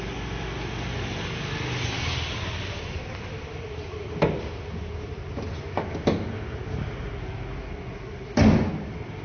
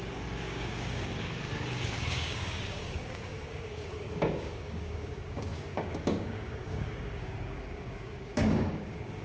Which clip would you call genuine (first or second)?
first